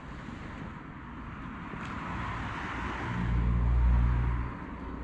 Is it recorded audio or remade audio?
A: recorded